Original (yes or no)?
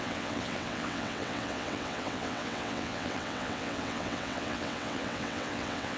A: no